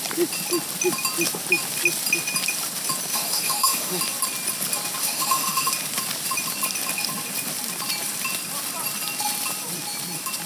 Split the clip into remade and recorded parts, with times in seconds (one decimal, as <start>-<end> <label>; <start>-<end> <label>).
0.0-3.1 recorded; 3.1-4.0 remade; 4.0-5.0 recorded; 5.0-5.7 remade; 5.7-10.5 recorded